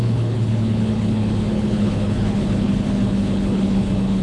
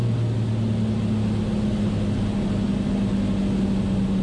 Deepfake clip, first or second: first